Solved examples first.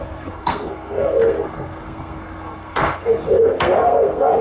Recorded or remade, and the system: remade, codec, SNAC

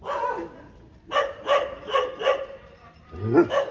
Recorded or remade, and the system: recorded